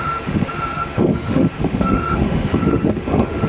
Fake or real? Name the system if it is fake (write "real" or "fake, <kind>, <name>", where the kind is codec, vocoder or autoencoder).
fake, autoencoder, DAC-VAE